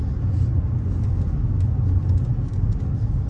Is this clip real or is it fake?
real